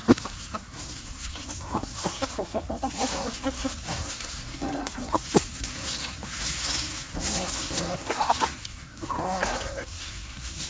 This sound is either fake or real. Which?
fake